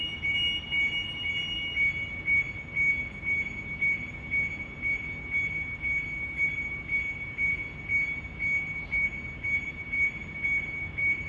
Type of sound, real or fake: real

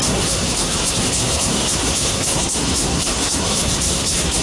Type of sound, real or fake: fake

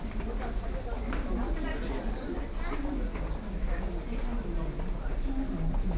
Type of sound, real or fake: real